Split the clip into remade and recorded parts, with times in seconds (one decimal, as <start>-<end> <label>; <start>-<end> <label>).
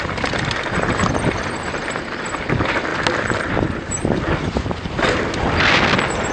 0.0-6.3 recorded